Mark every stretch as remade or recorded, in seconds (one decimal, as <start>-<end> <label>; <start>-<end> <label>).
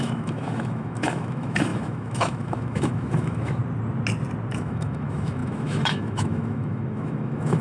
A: 0.0-3.6 remade; 3.6-4.5 recorded; 4.5-7.6 remade